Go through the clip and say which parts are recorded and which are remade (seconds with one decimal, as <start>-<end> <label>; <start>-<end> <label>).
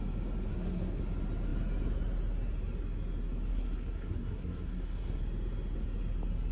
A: 0.0-0.5 recorded; 0.5-1.0 remade; 1.0-3.5 recorded; 3.5-5.2 remade; 5.2-6.5 recorded